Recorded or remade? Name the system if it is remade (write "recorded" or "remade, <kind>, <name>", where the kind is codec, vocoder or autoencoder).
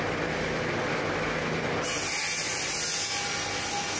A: recorded